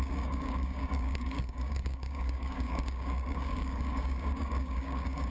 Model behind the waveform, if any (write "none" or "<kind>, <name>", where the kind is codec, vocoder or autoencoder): codec, DAC